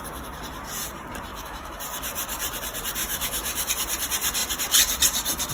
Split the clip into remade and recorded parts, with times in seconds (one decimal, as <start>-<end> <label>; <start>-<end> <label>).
0.0-1.3 recorded; 1.3-1.8 remade; 1.8-3.0 recorded; 3.0-3.7 remade; 3.7-5.5 recorded